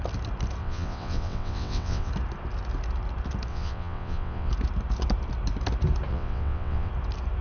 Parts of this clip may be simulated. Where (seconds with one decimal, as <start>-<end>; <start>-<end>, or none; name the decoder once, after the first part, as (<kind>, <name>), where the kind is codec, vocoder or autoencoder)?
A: 0.6-2.1 (vocoder, WaveNeXt); 3.5-4.5; 6.1-6.9